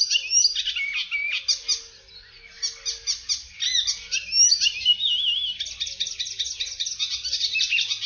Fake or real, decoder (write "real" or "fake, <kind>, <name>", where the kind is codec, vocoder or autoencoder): real